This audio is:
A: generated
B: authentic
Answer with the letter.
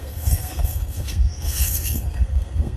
A